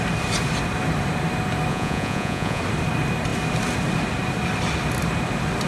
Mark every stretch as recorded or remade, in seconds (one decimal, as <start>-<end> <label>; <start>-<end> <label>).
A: 0.0-1.7 recorded; 1.7-2.6 remade; 2.6-5.7 recorded